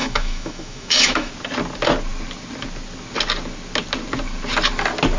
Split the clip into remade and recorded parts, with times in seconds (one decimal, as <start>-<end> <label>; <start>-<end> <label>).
0.0-1.3 remade; 1.3-5.2 recorded

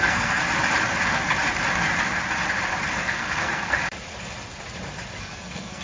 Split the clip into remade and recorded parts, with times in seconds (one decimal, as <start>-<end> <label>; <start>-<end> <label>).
0.0-0.4 remade; 0.4-2.9 recorded; 2.9-3.8 remade; 3.8-5.2 recorded; 5.2-5.8 remade

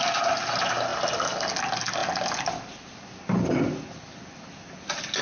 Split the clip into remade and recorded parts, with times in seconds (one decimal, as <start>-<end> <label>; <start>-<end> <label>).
0.0-5.2 recorded

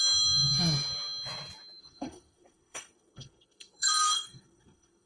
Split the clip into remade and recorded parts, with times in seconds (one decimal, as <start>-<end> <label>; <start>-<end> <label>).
0.0-1.8 recorded; 1.8-5.1 remade

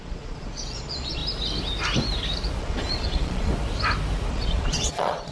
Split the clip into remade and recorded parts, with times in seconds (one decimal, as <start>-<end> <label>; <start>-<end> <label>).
0.0-1.2 remade; 1.2-2.6 recorded; 2.6-3.5 remade; 3.5-4.3 recorded; 4.3-5.3 remade

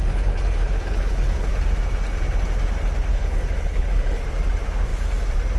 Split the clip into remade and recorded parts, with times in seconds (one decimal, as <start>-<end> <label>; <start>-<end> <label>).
0.0-1.5 remade; 1.5-3.1 recorded; 3.1-4.2 remade; 4.2-5.6 recorded